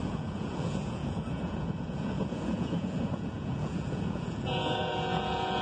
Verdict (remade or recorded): remade